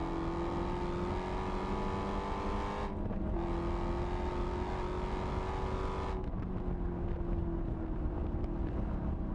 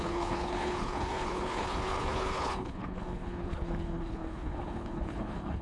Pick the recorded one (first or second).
first